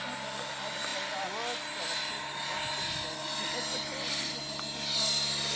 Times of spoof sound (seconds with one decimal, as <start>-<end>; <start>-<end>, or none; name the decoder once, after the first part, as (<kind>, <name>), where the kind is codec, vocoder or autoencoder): none